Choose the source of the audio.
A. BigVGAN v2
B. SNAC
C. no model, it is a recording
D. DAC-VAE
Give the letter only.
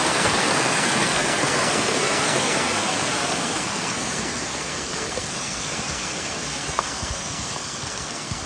B